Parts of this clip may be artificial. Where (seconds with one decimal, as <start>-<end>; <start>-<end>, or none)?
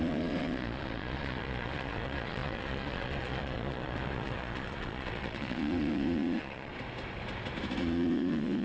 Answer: 0.0-6.7; 7.8-8.6